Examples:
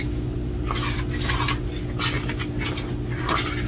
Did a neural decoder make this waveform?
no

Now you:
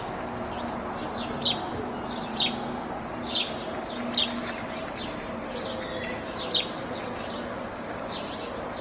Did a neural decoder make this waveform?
no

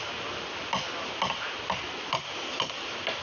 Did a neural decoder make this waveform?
no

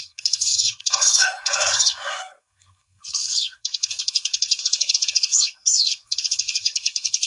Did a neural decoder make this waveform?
yes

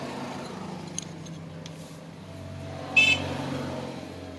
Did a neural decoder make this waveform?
no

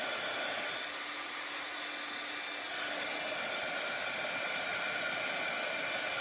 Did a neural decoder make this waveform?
no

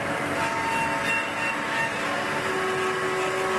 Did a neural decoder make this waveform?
no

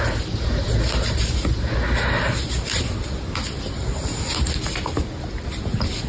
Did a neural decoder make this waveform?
no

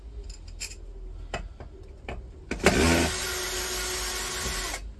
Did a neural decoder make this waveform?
no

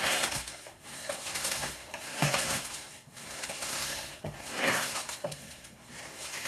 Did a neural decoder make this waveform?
yes